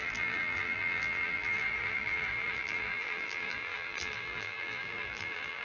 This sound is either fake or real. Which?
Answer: fake